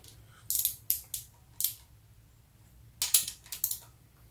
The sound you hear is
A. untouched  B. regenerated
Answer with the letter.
A